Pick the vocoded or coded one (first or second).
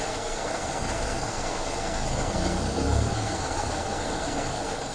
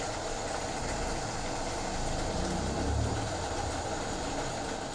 first